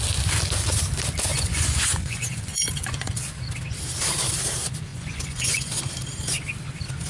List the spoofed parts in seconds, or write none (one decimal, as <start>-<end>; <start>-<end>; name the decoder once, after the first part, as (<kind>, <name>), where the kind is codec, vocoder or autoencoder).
1.3-3.2 (vocoder, Vocos); 4.9-5.8